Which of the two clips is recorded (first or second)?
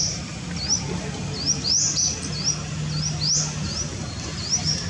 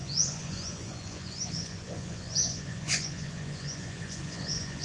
first